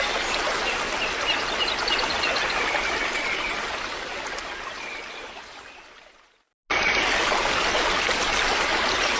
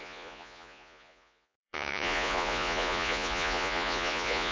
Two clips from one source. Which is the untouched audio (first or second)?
first